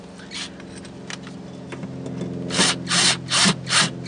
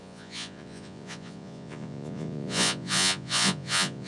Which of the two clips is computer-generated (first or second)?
second